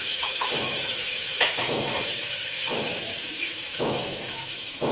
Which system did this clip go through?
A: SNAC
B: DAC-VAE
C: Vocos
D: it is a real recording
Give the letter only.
B